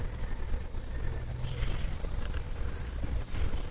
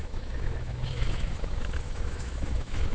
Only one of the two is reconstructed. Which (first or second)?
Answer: second